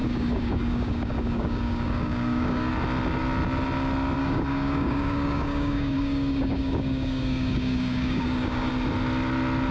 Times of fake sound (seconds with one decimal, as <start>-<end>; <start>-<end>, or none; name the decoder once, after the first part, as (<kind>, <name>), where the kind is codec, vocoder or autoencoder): 0.0-2.7 (codec, DAC); 4.2-8.7

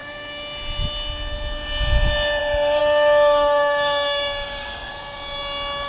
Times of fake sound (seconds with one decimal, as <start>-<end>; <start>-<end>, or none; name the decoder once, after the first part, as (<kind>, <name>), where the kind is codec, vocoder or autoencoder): 2.8-4.9 (codec, DAC)

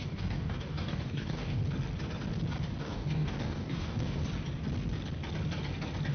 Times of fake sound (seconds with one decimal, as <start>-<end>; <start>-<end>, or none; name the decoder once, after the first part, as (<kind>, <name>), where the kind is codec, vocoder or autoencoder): 0.0-1.6 (codec, DAC); 2.8-4.2